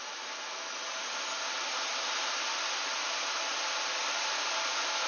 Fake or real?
real